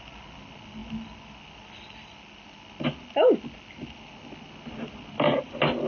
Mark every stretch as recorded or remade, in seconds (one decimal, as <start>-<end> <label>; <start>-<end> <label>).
0.0-5.9 recorded